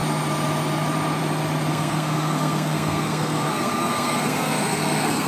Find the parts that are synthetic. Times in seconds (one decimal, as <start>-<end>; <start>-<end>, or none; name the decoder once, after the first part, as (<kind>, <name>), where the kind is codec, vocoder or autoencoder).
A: 1.7-5.3 (codec, SNAC)